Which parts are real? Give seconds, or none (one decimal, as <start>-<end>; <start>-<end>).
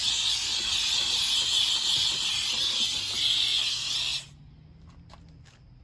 0.0-5.8